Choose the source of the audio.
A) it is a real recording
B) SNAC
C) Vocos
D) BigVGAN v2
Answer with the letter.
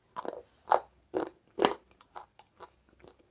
A